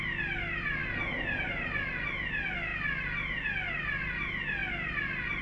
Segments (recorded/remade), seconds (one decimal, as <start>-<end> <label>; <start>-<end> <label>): 0.0-5.4 recorded